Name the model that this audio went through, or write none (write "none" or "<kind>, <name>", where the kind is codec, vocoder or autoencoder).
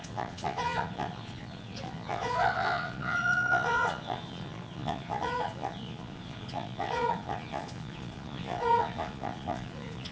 vocoder, Vocos